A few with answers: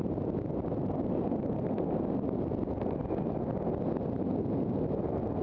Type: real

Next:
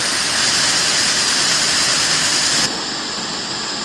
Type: real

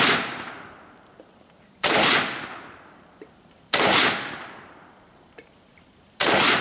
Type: fake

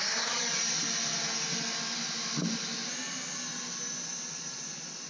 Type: real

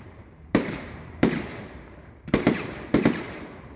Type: fake